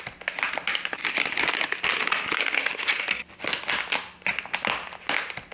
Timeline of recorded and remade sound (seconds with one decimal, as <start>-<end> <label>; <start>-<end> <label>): 0.0-5.5 recorded